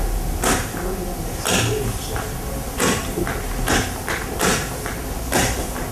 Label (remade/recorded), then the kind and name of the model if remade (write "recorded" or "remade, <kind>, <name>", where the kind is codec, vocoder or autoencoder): recorded